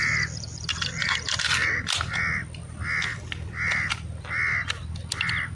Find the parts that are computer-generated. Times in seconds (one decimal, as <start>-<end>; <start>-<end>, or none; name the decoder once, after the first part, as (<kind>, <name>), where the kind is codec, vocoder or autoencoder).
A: none